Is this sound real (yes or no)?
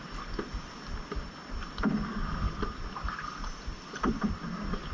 yes